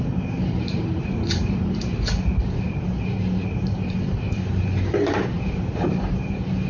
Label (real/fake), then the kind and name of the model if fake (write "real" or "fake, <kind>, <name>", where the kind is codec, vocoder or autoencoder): fake, vocoder, BigVGAN v2